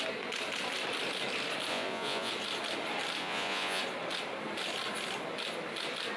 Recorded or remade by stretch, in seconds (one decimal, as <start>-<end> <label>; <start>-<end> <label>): 0.0-1.7 recorded; 1.7-2.3 remade; 2.3-3.2 recorded; 3.2-3.8 remade; 3.8-6.2 recorded